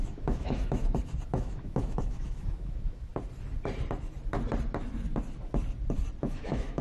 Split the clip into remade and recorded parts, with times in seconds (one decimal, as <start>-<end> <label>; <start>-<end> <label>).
0.0-0.8 remade; 0.8-1.3 recorded; 1.3-3.1 remade; 3.1-6.2 recorded; 6.2-6.8 remade